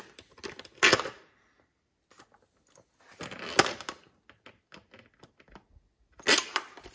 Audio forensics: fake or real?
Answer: real